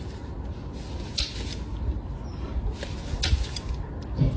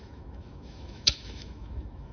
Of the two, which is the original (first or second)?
first